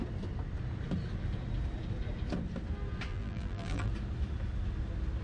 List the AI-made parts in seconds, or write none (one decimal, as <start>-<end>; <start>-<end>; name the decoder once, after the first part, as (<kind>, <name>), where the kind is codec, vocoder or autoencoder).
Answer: 3.1-3.9 (vocoder, BigVGAN v2)